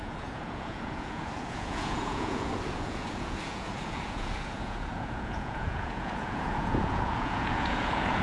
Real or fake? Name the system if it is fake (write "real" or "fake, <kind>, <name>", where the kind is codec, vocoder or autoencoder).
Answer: fake, vocoder, Vocos